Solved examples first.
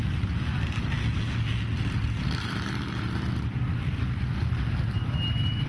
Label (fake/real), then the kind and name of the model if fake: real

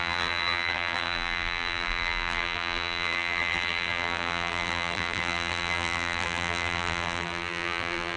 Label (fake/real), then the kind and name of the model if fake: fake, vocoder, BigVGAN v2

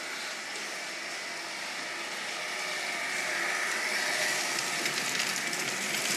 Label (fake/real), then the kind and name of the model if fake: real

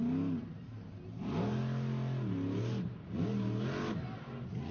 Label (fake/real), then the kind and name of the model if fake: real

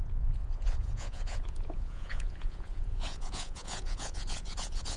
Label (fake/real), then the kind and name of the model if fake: fake, vocoder, Vocos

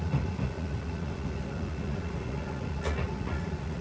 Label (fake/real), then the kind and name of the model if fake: fake, vocoder, Vocos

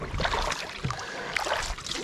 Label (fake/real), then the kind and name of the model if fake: real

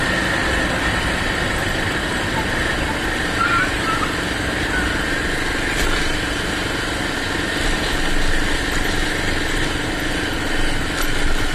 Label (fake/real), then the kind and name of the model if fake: real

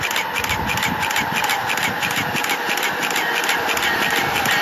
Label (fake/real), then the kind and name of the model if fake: real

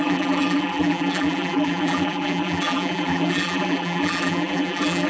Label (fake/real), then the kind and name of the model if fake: fake, vocoder, BigVGAN v2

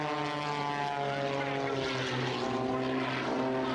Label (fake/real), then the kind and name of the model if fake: real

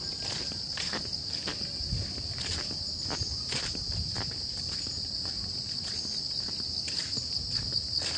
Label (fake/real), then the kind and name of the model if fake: real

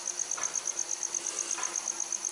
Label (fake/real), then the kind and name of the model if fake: real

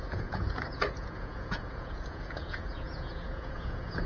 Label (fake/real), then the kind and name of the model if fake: fake, vocoder, Vocos